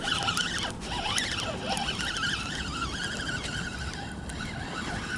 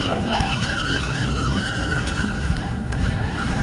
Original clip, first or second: first